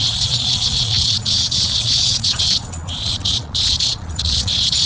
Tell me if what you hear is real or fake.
fake